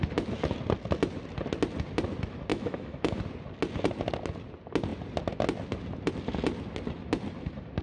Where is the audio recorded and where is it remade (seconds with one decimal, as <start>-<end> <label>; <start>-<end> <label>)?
0.0-2.5 recorded; 2.5-3.2 remade; 3.2-7.8 recorded